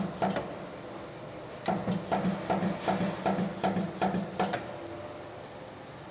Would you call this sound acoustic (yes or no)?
yes